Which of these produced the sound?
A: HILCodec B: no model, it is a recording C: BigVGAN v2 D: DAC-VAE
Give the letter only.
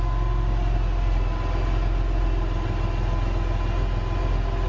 B